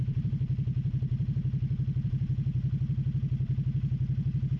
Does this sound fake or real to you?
real